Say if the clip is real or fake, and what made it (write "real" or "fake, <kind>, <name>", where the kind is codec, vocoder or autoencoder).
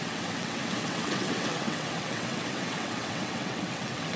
fake, vocoder, WaveNeXt